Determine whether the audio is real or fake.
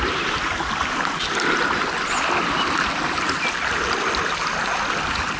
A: real